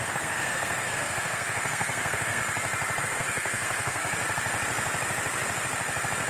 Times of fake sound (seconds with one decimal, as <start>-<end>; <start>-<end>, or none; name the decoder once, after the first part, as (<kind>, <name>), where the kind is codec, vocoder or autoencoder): 0.0-2.4 (codec, SNAC); 3.0-4.0